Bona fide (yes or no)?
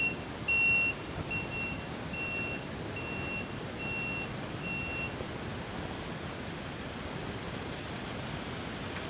yes